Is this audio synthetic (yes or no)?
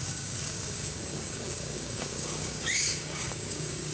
yes